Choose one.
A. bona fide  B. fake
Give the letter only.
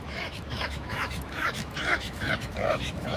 B